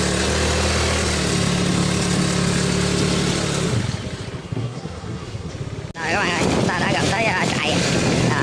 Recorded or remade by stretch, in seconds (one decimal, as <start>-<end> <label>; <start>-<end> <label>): 0.0-4.4 recorded; 4.4-5.5 remade; 5.5-8.4 recorded

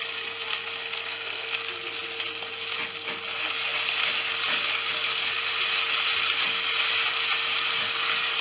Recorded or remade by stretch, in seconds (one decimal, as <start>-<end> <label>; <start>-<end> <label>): 0.0-0.8 recorded; 0.8-1.5 remade; 1.5-8.4 recorded